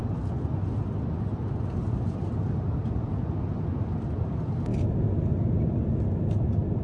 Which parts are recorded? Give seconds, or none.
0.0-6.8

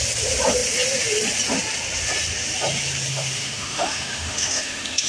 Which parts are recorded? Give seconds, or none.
0.0-3.1

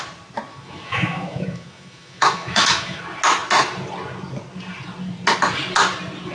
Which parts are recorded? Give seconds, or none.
0.0-0.5; 3.0-6.3

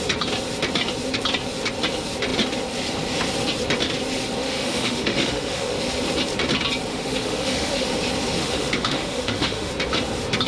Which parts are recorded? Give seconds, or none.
0.0-4.4; 5.8-6.9; 7.9-8.4; 9.7-10.5

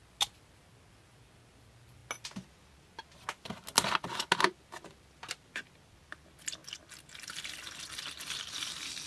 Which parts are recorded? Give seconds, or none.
0.0-9.1

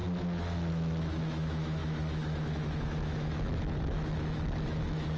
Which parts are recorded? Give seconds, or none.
0.0-0.7